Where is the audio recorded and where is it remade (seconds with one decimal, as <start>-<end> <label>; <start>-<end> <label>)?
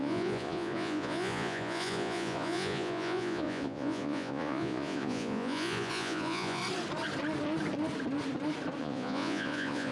0.0-6.6 remade; 6.6-8.8 recorded; 8.8-9.9 remade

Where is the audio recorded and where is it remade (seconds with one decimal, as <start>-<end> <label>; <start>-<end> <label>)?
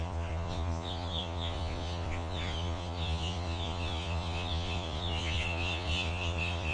0.0-6.7 remade